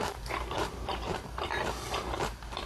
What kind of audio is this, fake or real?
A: fake